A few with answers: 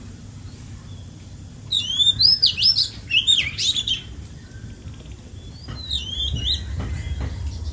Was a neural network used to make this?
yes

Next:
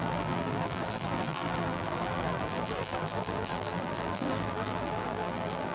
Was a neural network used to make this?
yes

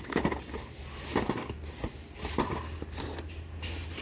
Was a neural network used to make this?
no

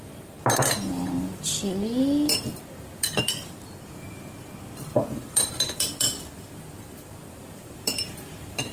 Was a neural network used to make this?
yes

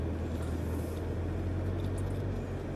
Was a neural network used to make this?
no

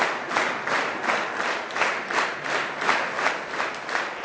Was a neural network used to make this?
no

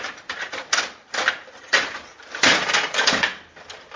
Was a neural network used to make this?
no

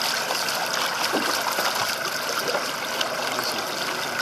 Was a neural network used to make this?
no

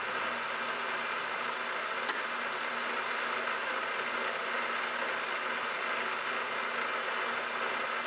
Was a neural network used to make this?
no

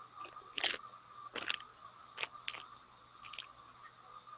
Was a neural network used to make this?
no